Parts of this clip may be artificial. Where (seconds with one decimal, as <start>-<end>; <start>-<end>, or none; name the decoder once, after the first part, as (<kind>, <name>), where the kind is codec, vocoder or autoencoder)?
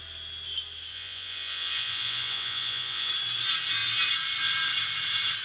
0.9-3.1 (vocoder, Vocos)